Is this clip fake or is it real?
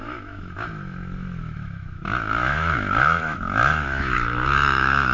fake